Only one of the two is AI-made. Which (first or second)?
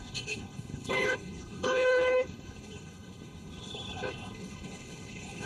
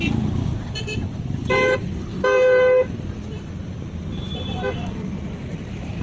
first